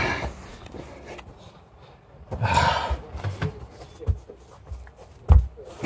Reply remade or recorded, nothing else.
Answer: recorded